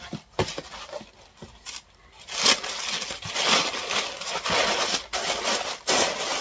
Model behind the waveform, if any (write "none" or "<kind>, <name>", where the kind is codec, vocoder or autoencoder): none